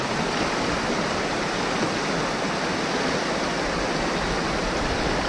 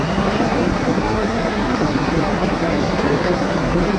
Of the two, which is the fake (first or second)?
second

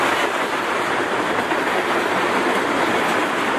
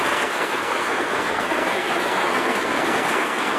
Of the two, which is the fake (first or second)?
second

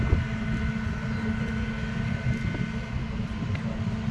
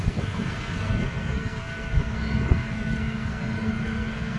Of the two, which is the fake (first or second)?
second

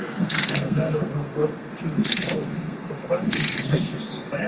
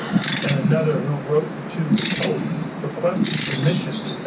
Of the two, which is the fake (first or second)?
first